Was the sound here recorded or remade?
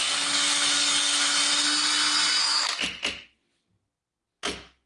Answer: recorded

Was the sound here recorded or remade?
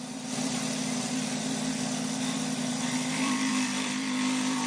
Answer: remade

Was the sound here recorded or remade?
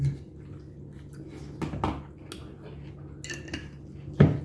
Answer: recorded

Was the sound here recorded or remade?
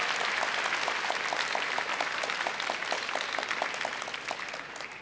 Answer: recorded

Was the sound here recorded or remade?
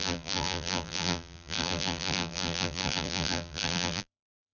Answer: remade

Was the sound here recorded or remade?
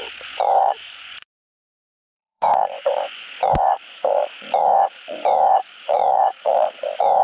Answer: remade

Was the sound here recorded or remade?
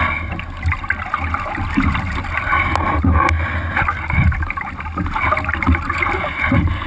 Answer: recorded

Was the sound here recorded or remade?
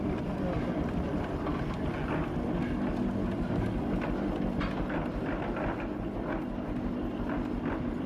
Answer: recorded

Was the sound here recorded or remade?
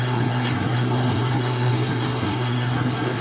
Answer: remade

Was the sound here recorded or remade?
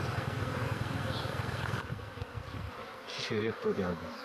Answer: remade